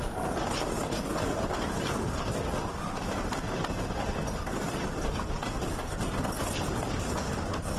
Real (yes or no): yes